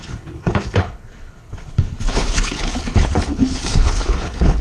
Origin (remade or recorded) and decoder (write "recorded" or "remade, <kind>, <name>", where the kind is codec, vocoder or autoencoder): remade, codec, HILCodec